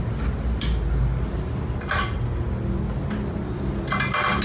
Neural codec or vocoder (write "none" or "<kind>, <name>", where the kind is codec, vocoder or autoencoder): none